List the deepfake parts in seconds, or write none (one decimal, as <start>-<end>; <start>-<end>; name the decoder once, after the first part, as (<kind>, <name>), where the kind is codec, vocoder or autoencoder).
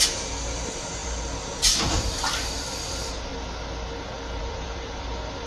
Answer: 0.0-3.3 (vocoder, BigVGAN v2); 4.4-5.5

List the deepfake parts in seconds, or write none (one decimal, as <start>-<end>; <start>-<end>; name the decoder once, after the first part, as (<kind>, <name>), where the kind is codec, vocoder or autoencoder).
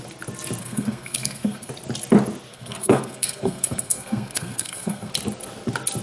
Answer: 0.6-1.7 (codec, SNAC); 2.5-5.1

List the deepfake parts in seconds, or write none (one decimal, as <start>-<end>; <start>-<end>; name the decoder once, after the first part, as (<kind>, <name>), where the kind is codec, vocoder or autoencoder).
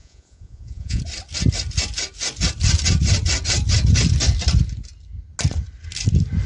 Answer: 0.0-1.0 (vocoder, Vocos)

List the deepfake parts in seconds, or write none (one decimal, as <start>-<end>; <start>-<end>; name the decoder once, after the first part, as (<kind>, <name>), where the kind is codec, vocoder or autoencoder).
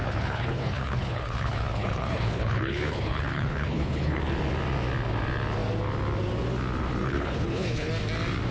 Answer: 0.0-4.2 (codec, HILCodec); 7.0-7.9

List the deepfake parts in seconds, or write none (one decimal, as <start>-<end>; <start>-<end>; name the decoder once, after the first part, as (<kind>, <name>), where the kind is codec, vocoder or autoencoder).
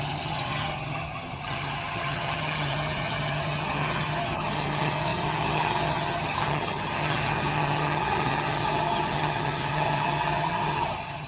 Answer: 0.0-11.3 (vocoder, HiFi-GAN)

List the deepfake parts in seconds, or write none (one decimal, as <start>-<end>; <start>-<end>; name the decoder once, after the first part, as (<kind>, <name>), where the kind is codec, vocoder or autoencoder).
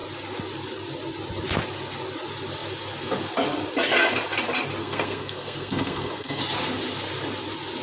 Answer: 4.8-6.4 (codec, SNAC)